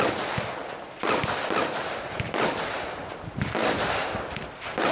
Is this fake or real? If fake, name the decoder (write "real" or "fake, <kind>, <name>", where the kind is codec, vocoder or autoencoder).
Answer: real